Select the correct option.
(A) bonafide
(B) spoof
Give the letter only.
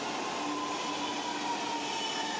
A